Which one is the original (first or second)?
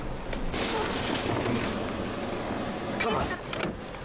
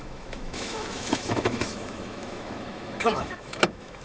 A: first